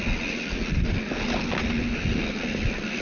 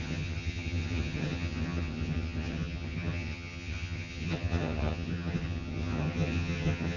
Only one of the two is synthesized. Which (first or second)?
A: second